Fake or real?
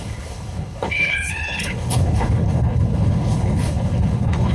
fake